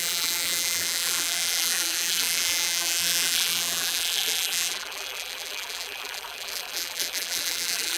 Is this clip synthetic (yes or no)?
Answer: yes